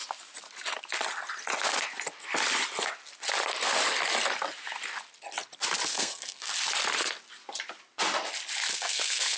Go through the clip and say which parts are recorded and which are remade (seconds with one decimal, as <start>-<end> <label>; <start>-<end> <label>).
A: 0.0-5.9 recorded; 5.9-6.5 remade; 6.5-8.7 recorded; 8.7-9.4 remade